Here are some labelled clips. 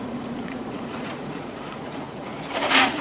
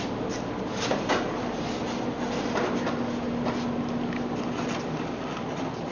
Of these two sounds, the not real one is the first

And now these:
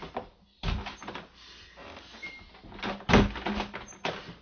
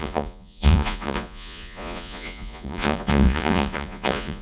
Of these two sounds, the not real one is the second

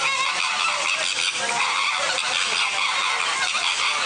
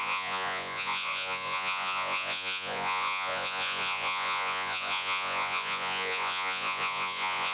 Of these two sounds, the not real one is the second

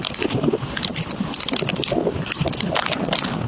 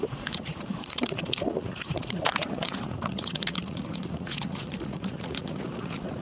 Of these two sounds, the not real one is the second